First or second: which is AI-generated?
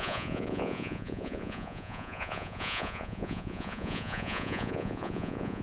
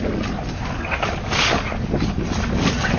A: first